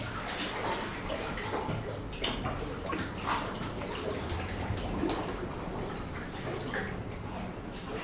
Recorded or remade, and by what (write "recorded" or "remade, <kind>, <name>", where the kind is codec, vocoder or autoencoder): recorded